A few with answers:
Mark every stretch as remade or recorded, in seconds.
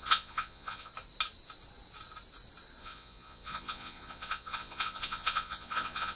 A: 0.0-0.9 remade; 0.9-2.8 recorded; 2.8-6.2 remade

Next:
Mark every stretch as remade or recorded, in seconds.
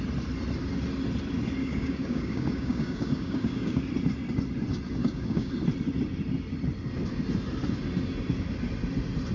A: 0.0-1.6 recorded; 1.6-3.8 remade; 3.8-5.0 recorded; 5.0-5.5 remade; 5.5-9.3 recorded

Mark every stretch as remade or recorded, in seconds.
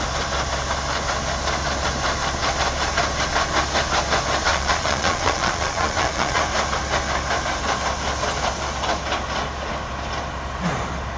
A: 0.0-4.5 recorded; 4.5-6.4 remade; 6.4-11.2 recorded